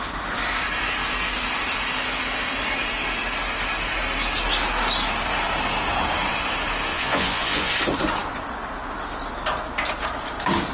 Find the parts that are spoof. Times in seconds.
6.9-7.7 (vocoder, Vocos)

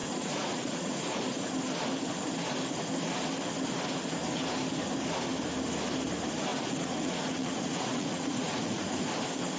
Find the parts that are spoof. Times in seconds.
0.0-1.5 (vocoder, Vocos); 6.5-9.1

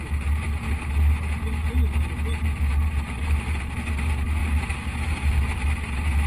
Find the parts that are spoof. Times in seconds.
none